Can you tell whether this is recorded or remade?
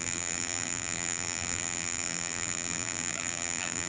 remade